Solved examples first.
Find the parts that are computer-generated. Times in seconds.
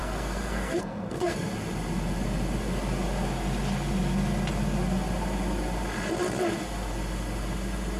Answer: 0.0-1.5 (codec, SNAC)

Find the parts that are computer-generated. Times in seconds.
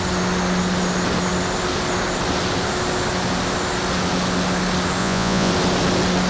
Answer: 5.0-5.5 (vocoder, Vocos)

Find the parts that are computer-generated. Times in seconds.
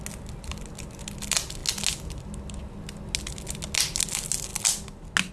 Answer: none